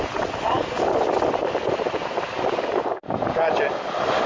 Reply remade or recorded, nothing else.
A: recorded